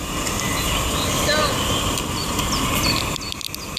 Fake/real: real